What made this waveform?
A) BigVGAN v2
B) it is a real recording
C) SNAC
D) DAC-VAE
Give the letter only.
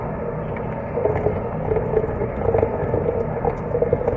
B